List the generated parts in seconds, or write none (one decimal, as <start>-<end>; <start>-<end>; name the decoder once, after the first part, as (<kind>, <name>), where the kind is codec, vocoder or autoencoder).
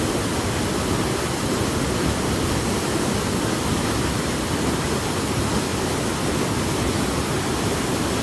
5.7-7.3 (vocoder, BigVGAN v2)